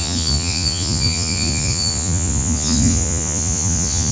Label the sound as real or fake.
fake